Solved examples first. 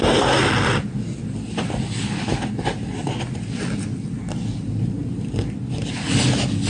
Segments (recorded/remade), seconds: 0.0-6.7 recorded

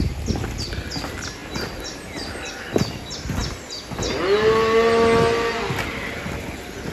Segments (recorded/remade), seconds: 0.0-6.9 recorded

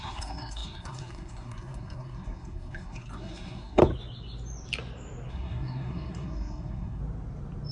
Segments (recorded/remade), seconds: 0.0-3.8 remade; 3.8-5.3 recorded; 5.3-7.0 remade; 7.0-7.7 recorded